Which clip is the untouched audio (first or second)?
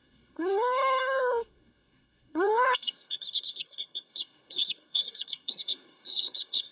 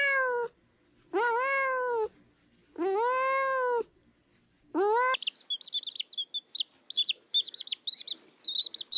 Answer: second